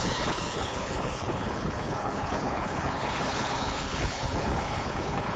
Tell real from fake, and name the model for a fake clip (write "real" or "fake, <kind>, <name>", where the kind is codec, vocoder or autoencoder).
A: fake, codec, HILCodec